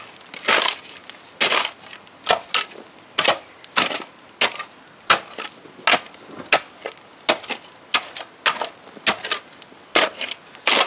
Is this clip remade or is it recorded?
recorded